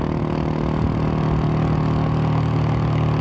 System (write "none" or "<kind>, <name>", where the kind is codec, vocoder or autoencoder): none